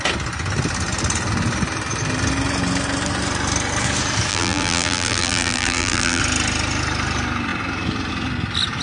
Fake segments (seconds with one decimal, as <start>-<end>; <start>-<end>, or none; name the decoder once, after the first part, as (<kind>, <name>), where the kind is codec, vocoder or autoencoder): 4.3-6.2 (vocoder, BigVGAN v2)